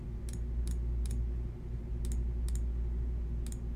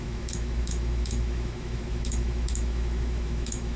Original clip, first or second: first